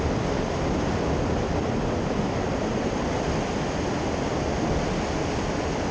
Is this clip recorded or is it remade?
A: recorded